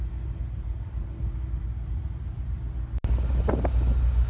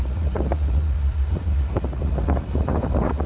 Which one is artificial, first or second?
second